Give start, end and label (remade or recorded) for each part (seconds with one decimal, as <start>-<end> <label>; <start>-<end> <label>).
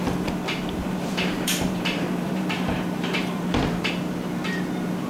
0.0-0.8 recorded; 0.8-3.9 remade; 3.9-5.1 recorded